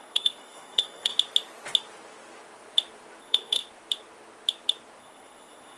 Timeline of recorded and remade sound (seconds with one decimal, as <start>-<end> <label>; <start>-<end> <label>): 0.0-1.1 remade; 1.1-3.2 recorded; 3.2-3.6 remade; 3.6-5.0 recorded; 5.0-5.8 remade